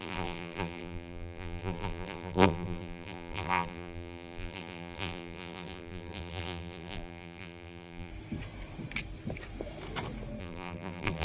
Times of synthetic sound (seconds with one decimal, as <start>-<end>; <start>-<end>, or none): 0.0-8.1; 10.4-11.2